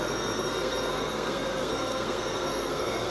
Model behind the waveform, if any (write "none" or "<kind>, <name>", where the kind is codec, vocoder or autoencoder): codec, SNAC